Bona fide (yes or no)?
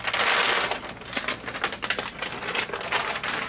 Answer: yes